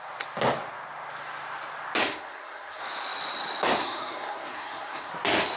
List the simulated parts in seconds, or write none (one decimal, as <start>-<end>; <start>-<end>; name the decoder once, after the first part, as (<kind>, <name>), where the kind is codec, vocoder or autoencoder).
2.0-2.8 (codec, SNAC); 3.8-5.1